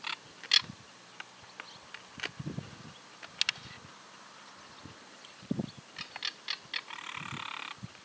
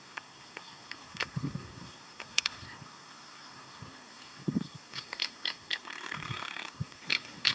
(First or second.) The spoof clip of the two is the second